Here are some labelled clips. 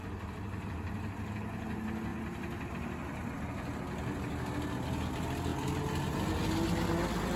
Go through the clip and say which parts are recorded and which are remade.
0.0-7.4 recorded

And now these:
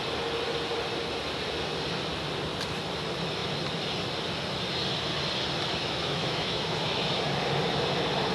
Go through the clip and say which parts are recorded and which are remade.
0.0-5.8 recorded; 5.8-7.1 remade; 7.1-8.3 recorded